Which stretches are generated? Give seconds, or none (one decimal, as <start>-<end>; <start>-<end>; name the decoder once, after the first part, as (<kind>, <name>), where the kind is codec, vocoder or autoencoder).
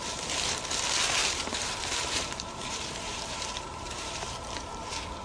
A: 1.2-4.3 (vocoder, BigVGAN v2)